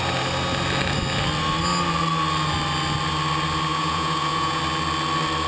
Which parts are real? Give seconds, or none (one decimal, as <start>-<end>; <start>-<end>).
0.0-3.7; 4.6-5.5